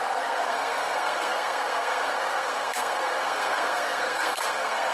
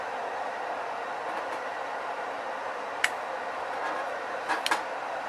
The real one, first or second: second